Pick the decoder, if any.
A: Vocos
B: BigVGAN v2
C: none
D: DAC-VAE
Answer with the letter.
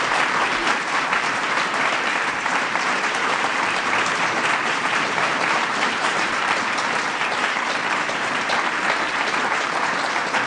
B